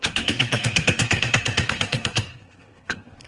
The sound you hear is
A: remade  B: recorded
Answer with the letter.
A